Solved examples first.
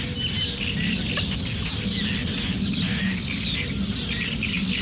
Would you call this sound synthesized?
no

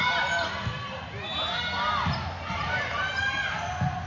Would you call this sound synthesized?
no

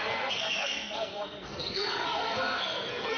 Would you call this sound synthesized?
yes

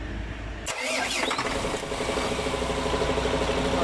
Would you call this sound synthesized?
no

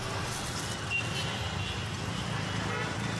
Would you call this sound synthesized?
no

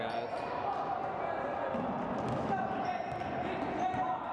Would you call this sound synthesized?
no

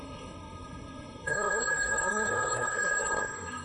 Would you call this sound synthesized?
yes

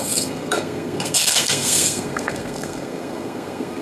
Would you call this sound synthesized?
yes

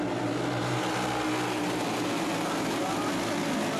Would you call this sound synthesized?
no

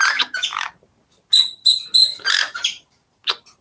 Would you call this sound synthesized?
no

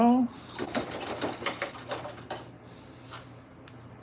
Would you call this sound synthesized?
no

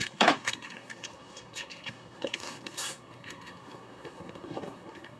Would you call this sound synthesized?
yes